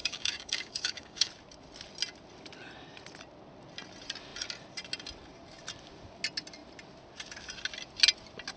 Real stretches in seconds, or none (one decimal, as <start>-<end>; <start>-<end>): 1.3-8.6